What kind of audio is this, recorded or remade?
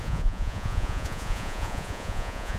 remade